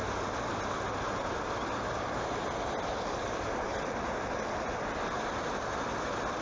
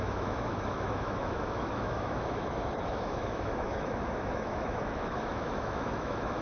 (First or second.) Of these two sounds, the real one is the first